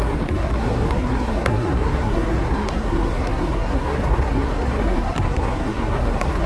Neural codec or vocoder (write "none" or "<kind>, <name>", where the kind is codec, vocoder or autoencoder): codec, SNAC